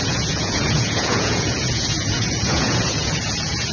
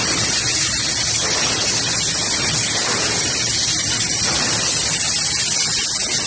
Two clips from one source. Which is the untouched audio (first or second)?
second